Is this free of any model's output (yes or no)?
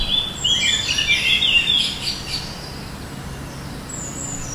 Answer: yes